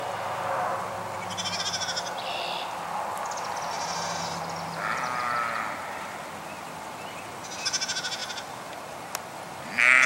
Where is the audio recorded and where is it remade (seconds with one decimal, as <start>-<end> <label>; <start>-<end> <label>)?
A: 0.0-10.1 recorded

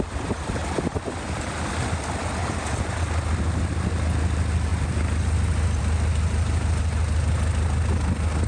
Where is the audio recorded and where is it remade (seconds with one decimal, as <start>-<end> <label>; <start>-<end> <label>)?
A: 0.0-2.4 recorded; 2.4-3.0 remade; 3.0-8.5 recorded

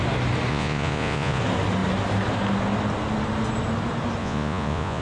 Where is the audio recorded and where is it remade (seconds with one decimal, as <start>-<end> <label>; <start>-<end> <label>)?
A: 0.0-0.5 recorded; 0.5-1.4 remade; 1.4-4.2 recorded; 4.2-5.0 remade

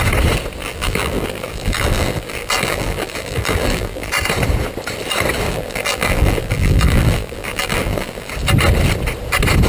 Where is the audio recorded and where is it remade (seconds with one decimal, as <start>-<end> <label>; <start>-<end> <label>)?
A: 0.0-0.6 recorded; 0.6-4.1 remade; 4.1-5.5 recorded; 5.5-8.3 remade; 8.3-9.7 recorded

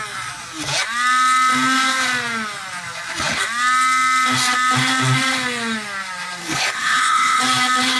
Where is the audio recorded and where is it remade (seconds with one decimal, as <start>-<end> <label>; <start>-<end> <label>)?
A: 0.0-6.4 recorded; 6.4-7.4 remade; 7.4-8.0 recorded

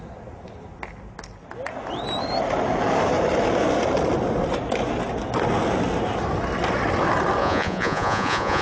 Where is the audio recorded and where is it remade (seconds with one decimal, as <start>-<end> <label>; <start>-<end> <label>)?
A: 0.0-7.4 recorded; 7.4-8.6 remade